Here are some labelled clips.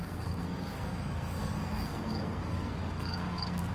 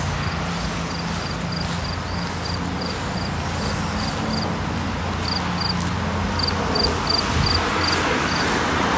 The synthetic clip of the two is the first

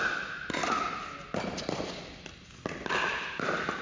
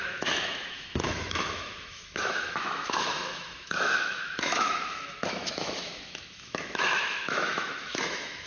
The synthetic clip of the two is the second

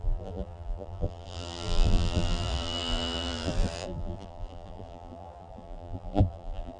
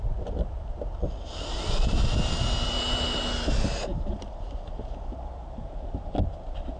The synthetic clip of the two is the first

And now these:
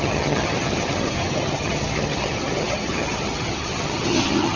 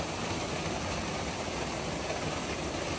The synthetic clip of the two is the first